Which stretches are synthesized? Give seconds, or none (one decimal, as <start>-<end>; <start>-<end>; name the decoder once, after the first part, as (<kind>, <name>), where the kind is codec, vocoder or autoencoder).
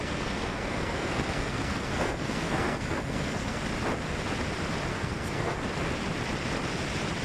0.0-3.6 (codec, SNAC); 4.9-5.6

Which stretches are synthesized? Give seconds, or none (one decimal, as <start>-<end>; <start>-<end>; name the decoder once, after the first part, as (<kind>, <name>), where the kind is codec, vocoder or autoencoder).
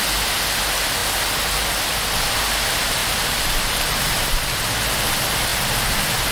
3.0-4.6 (vocoder, BigVGAN v2)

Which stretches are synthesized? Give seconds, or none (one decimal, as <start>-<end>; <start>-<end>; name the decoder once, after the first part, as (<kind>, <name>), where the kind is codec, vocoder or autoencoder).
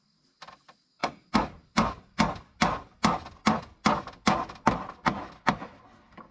none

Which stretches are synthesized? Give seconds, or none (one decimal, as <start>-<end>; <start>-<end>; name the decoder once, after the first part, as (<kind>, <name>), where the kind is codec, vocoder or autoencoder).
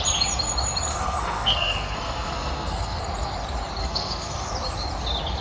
0.9-3.0 (codec, SNAC); 3.8-4.5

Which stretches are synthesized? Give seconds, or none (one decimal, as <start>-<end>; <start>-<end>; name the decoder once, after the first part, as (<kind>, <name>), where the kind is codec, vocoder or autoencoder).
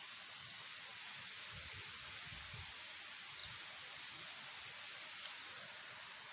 0.9-1.9 (vocoder, BigVGAN v2)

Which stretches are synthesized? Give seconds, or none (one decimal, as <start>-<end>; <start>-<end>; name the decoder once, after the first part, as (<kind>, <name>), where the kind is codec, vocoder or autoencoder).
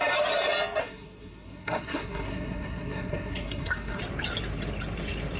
0.8-4.0 (codec, SNAC)